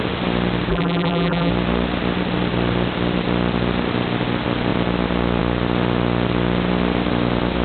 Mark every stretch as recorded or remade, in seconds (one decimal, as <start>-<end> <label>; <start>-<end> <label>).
0.0-0.7 recorded; 0.7-1.5 remade; 1.5-7.6 recorded

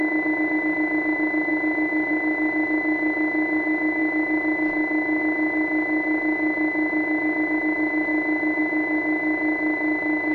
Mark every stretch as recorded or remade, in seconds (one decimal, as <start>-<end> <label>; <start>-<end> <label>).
0.0-10.3 recorded

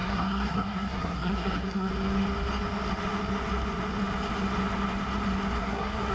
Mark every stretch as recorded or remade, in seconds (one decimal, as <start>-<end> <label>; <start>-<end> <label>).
0.0-1.9 remade; 1.9-5.6 recorded; 5.6-6.1 remade

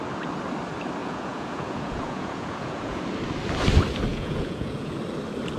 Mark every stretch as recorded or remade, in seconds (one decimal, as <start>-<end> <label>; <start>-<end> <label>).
0.0-1.0 recorded; 1.0-3.0 remade; 3.0-4.1 recorded; 4.1-5.0 remade; 5.0-5.6 recorded

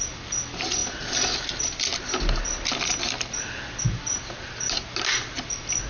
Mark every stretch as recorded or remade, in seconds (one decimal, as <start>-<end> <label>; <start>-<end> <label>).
0.0-5.9 recorded

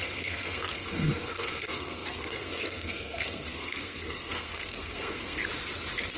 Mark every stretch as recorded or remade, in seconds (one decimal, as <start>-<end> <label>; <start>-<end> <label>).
0.0-5.4 remade; 5.4-6.2 recorded